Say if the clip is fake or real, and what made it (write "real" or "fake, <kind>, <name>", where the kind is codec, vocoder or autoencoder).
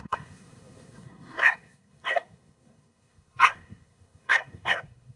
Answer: fake, codec, SNAC